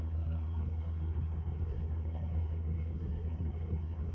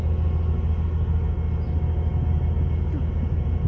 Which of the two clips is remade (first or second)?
first